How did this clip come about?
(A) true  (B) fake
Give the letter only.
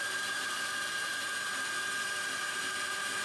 A